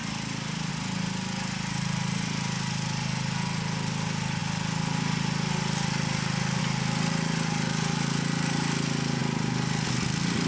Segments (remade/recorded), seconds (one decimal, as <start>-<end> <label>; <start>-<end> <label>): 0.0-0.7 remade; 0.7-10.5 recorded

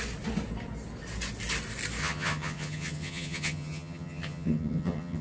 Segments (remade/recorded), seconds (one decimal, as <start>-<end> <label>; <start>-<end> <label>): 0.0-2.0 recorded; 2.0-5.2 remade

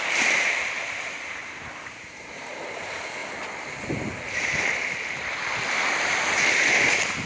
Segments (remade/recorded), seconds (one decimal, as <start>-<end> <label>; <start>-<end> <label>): 0.0-1.4 recorded; 1.4-2.4 remade; 2.4-7.3 recorded